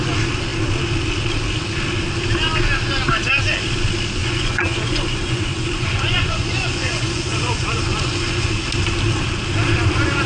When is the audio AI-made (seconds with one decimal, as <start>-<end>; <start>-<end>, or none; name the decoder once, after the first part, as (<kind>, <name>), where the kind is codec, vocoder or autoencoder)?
4.2-8.5 (vocoder, Vocos)